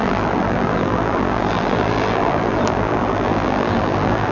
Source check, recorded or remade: remade